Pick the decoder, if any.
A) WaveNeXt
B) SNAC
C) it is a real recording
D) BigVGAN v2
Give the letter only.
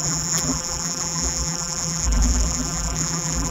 D